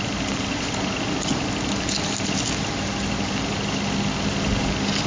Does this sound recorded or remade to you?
recorded